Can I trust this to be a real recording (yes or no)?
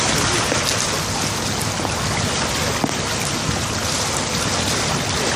yes